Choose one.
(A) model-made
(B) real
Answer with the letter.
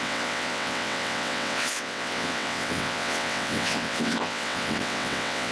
A